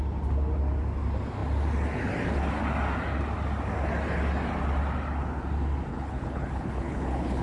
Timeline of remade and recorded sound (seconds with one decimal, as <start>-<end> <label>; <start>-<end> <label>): 0.0-5.9 recorded; 5.9-7.4 remade